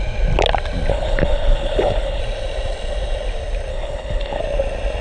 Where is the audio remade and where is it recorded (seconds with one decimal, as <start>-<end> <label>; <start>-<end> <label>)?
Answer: 0.0-0.9 recorded; 0.9-2.2 remade; 2.2-3.7 recorded; 3.7-4.4 remade; 4.4-5.0 recorded